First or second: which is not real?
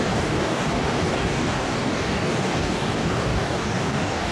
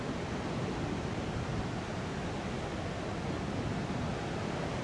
first